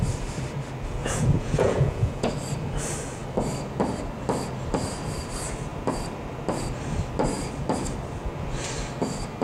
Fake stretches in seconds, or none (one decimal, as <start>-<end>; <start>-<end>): 1.0-2.3